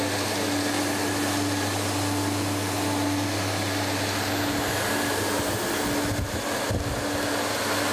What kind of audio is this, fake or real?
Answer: real